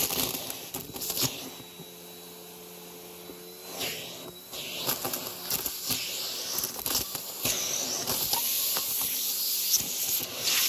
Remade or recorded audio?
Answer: recorded